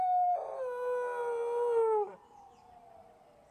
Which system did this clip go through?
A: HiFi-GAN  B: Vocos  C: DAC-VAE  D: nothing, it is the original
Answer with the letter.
D